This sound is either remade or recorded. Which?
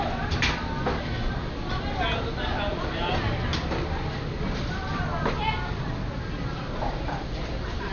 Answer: recorded